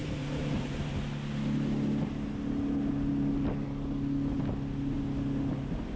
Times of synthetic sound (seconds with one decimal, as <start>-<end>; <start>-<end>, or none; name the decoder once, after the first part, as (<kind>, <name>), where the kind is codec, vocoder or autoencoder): 0.0-0.9 (vocoder, BigVGAN v2)